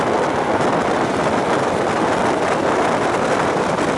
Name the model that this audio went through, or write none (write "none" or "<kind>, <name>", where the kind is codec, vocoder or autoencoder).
none